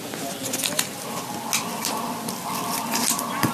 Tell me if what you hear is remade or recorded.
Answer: recorded